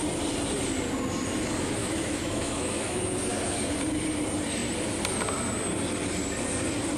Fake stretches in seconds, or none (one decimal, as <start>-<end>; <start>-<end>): 1.8-3.0